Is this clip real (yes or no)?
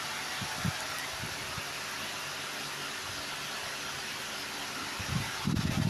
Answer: yes